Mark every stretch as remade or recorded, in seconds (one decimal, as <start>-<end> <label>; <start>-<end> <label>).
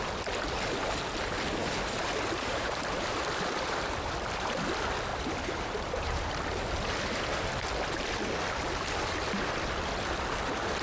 0.0-1.6 recorded; 1.6-2.8 remade; 2.8-5.1 recorded; 5.1-6.3 remade; 6.3-10.8 recorded